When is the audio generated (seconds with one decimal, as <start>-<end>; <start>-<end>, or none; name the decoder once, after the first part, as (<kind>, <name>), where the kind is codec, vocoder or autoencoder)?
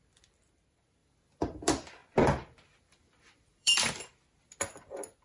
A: 1.0-1.6 (vocoder, BigVGAN v2); 2.0-4.2